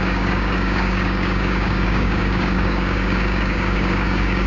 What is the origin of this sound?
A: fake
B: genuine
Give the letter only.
A